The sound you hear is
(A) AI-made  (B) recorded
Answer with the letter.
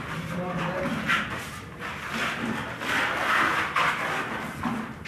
B